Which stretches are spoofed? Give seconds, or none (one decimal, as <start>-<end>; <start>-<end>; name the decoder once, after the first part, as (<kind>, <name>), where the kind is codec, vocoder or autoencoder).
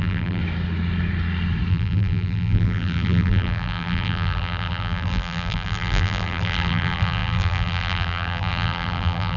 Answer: 0.0-0.4 (vocoder, BigVGAN v2); 1.7-9.4